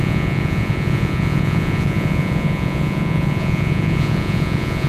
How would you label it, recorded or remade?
remade